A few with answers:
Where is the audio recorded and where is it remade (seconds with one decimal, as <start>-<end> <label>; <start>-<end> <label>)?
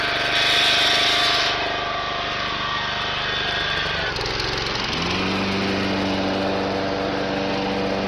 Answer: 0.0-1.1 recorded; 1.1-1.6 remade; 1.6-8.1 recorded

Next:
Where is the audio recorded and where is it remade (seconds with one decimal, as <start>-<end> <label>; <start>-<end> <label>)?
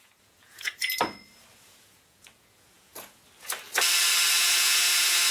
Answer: 0.0-0.7 remade; 0.7-1.5 recorded; 1.5-3.2 remade; 3.2-4.4 recorded; 4.4-5.3 remade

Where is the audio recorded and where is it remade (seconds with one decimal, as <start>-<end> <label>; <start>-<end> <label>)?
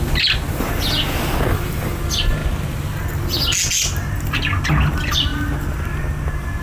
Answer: 0.0-6.6 recorded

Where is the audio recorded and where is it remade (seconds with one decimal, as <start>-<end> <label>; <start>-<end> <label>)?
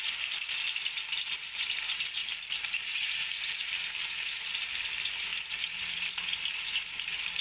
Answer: 0.0-7.4 remade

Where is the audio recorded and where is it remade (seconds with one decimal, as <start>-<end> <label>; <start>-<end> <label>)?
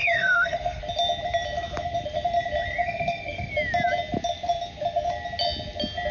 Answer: 0.0-0.8 remade; 0.8-2.8 recorded; 2.8-3.5 remade; 3.5-6.1 recorded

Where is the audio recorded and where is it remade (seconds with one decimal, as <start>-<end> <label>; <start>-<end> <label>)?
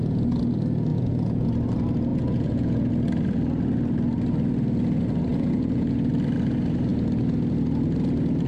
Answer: 0.0-0.9 recorded; 0.9-1.5 remade; 1.5-2.1 recorded; 2.1-2.9 remade; 2.9-5.3 recorded; 5.3-6.1 remade; 6.1-8.5 recorded